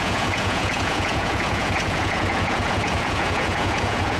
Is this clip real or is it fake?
fake